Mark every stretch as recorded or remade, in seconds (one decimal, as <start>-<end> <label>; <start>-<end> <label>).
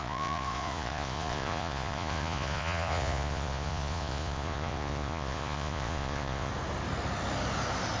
0.0-6.5 remade; 6.5-8.0 recorded